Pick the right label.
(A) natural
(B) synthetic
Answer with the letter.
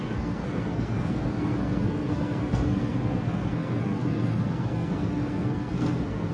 B